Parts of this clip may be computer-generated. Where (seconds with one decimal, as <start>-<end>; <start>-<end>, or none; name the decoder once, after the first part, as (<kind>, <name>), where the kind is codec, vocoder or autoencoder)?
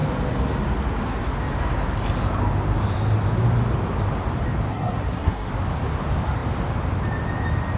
4.7-5.5 (codec, SNAC)